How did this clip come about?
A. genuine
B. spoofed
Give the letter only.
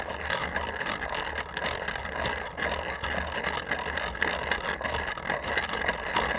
A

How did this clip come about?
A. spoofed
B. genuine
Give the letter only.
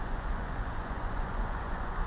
A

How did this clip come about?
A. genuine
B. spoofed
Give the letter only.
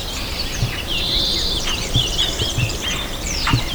B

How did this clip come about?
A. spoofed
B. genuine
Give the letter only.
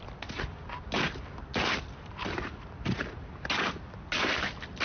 B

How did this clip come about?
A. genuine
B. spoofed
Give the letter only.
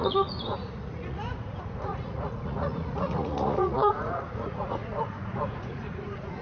B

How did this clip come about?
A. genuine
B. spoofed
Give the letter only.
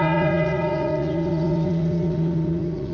B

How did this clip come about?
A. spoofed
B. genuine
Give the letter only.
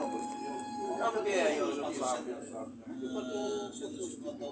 B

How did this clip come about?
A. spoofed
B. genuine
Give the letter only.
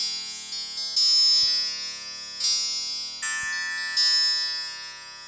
B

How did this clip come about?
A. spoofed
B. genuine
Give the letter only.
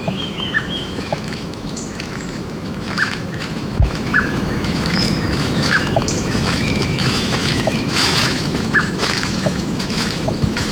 A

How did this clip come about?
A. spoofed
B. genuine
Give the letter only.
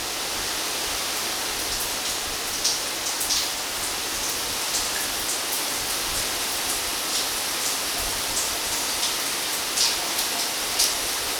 B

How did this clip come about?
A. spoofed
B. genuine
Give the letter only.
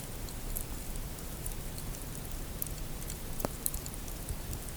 A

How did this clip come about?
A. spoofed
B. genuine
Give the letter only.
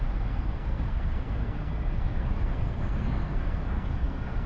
A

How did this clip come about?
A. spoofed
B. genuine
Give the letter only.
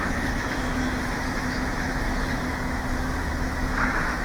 A